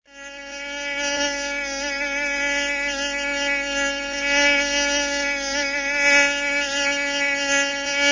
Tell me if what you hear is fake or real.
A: real